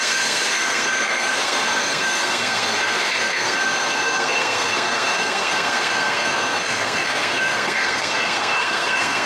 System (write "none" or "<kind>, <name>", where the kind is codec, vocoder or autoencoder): codec, SNAC